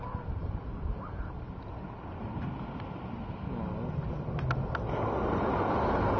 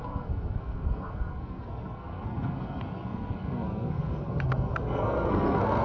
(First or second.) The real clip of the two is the first